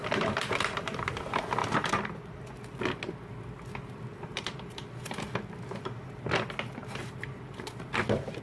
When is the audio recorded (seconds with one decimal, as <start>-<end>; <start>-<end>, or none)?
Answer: 1.1-1.6; 2.6-4.3; 5.0-6.8; 7.9-8.4